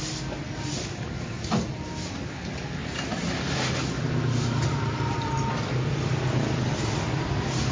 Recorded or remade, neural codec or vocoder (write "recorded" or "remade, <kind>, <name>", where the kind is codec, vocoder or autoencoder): recorded